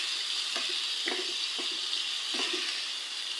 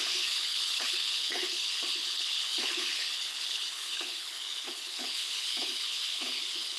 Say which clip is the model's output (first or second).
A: second